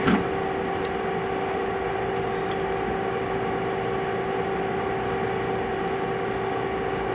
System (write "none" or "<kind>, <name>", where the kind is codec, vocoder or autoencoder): none